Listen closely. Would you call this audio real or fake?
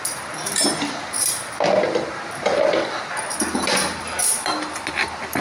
fake